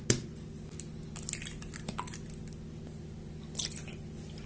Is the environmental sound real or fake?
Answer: real